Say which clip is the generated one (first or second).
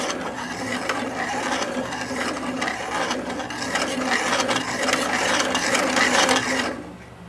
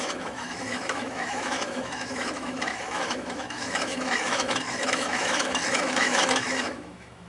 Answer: second